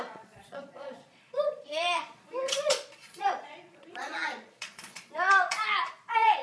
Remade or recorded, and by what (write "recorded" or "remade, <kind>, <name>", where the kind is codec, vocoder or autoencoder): remade, vocoder, Vocos